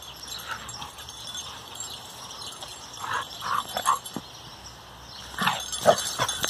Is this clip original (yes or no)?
yes